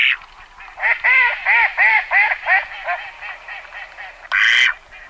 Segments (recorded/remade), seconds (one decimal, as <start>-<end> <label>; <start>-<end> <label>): 0.0-5.1 recorded